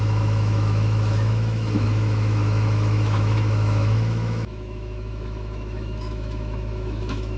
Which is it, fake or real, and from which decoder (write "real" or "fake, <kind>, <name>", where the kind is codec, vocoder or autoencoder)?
fake, autoencoder, DAC-VAE